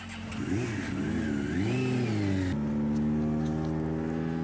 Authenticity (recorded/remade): recorded